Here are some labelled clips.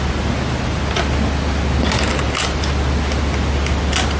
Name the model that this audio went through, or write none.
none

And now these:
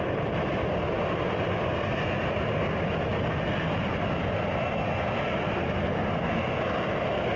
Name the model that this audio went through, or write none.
none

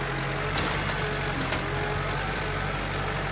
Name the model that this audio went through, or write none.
none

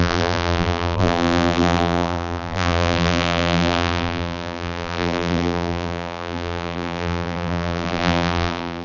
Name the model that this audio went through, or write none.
vocoder, BigVGAN v2